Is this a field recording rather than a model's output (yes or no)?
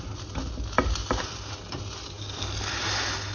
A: yes